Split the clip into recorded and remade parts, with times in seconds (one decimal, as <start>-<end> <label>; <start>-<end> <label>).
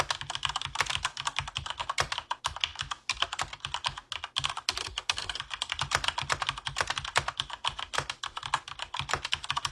0.0-4.8 recorded; 4.8-5.4 remade; 5.4-9.7 recorded